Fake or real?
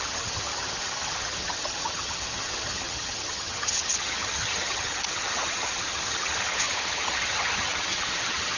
fake